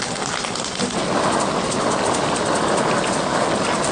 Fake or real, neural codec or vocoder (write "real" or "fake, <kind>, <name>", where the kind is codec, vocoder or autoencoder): real